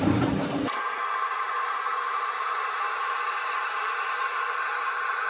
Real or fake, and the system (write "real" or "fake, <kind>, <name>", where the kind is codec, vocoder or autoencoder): fake, vocoder, BigVGAN v2